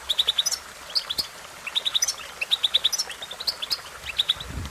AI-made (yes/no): no